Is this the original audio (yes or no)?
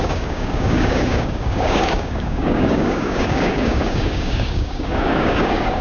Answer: no